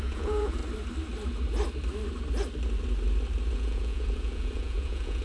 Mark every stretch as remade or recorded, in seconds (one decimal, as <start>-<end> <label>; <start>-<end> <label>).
0.0-0.6 remade; 0.6-3.5 recorded; 3.5-5.2 remade